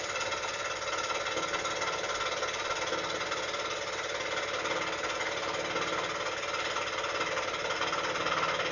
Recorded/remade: recorded